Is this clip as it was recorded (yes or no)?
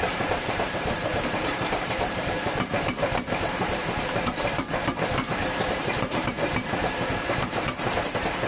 no